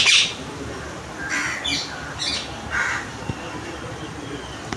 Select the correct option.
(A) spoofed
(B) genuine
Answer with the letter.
B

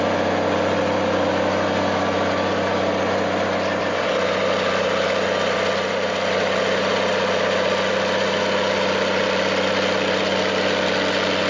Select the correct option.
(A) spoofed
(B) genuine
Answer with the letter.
B